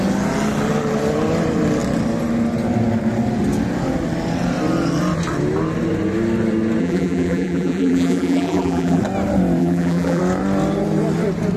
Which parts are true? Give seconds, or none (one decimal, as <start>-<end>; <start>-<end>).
0.0-6.8; 9.0-9.6; 10.2-11.6